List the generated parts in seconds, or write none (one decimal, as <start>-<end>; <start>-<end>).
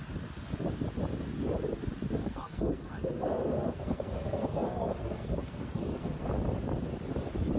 2.2-6.3